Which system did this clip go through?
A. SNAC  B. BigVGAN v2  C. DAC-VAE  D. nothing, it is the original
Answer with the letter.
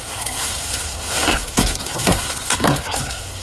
A